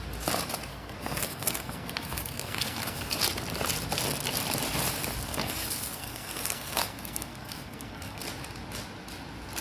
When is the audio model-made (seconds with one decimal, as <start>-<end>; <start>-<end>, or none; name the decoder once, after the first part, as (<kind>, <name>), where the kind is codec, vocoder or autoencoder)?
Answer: 0.7-3.2 (codec, SNAC); 5.3-8.2